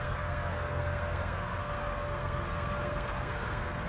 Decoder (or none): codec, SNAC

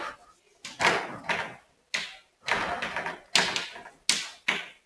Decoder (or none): none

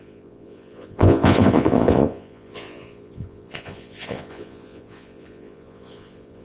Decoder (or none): vocoder, Vocos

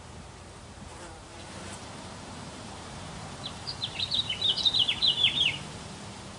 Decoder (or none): vocoder, BigVGAN v2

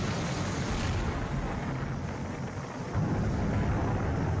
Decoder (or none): none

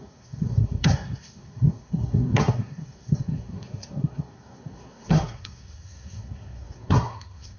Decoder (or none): codec, SNAC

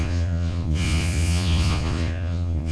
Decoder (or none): vocoder, Vocos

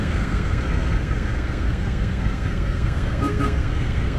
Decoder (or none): codec, SNAC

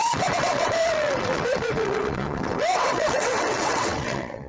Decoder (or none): vocoder, WaveNeXt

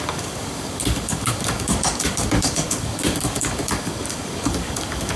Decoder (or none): codec, DAC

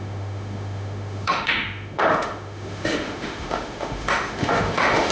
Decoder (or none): autoencoder, DAC-VAE